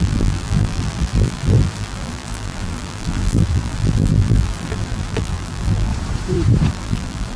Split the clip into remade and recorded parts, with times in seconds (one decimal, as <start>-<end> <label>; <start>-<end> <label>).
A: 0.0-5.9 remade; 5.9-6.7 recorded; 6.7-7.4 remade